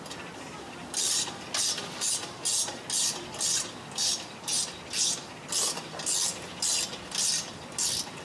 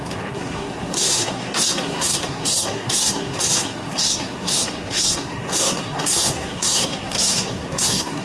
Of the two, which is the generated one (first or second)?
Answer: second